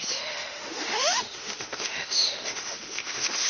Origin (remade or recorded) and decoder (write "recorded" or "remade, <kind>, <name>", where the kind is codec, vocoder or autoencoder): remade, autoencoder, DAC-VAE